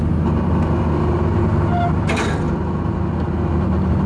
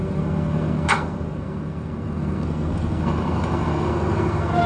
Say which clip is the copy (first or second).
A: second